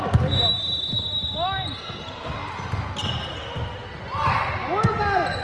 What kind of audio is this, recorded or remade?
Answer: recorded